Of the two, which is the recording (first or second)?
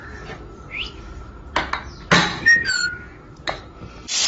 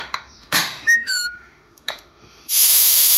first